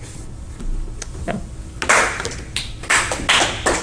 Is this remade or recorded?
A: recorded